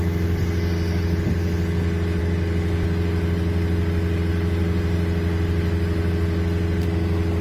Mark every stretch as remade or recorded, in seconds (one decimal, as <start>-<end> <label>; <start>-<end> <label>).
0.0-7.4 recorded